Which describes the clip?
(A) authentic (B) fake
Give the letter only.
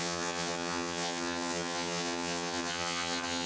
B